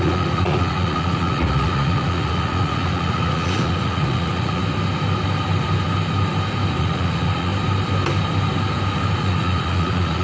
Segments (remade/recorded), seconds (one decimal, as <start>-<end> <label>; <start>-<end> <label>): 0.0-4.6 remade; 4.6-6.8 recorded; 6.8-7.5 remade; 7.5-9.2 recorded; 9.2-10.2 remade